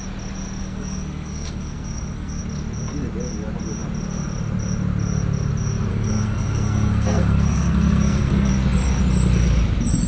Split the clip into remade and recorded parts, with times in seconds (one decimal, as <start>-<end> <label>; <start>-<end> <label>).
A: 0.0-0.6 recorded; 0.6-2.4 remade; 2.4-5.9 recorded; 5.9-8.5 remade; 8.5-10.1 recorded